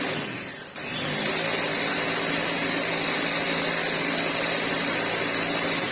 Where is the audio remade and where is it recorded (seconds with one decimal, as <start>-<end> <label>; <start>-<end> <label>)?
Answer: 0.0-5.9 recorded